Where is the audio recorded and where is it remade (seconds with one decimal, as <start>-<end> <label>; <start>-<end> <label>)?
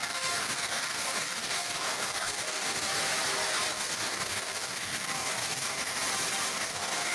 0.0-2.9 remade; 2.9-3.7 recorded; 3.7-6.0 remade; 6.0-6.5 recorded; 6.5-7.1 remade